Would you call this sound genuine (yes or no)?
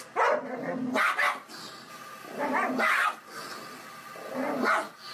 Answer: yes